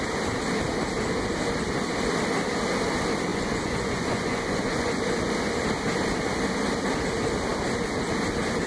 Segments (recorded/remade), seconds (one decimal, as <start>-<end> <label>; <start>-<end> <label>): 0.0-3.3 recorded; 3.3-4.9 remade; 4.9-8.7 recorded